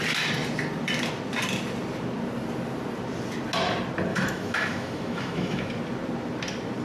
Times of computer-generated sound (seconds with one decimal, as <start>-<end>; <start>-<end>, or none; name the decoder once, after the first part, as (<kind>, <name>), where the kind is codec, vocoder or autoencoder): 4.1-5.7 (autoencoder, DAC-VAE)

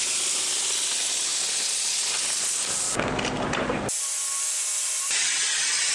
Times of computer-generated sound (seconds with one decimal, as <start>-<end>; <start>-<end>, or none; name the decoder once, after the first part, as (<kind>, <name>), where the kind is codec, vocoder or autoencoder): none

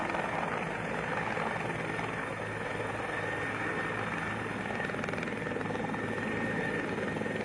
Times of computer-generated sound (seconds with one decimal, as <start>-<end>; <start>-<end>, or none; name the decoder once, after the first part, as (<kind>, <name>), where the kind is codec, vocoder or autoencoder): none

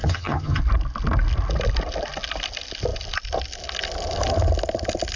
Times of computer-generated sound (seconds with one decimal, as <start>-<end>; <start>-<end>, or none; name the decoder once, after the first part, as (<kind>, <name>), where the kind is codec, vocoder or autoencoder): 0.0-0.6 (vocoder, HiFi-GAN)

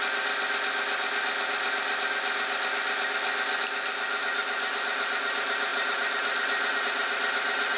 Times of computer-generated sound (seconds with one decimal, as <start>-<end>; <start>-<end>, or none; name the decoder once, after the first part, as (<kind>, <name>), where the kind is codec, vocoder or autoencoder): none

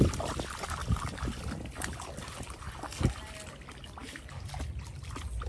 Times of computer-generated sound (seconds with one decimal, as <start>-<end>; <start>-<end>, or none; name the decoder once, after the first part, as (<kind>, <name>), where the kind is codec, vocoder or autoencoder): none

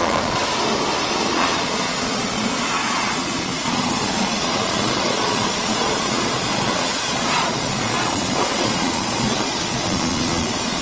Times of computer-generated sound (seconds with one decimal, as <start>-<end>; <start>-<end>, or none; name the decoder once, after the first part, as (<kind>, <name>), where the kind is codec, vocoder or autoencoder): 0.0-0.4 (vocoder, Vocos); 1.1-10.8

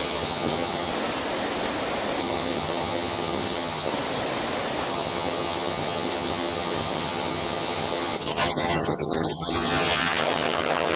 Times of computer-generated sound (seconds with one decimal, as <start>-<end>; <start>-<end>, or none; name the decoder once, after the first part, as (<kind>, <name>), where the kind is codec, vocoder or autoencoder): 0.0-0.9 (vocoder, HiFi-GAN); 2.2-3.9; 4.9-10.9